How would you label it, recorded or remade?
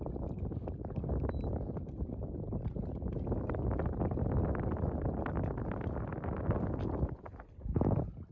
recorded